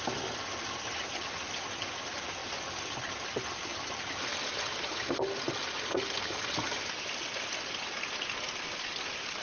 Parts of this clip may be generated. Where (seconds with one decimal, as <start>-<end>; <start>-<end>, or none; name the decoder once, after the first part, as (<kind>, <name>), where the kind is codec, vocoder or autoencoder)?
none